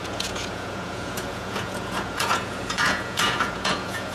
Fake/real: fake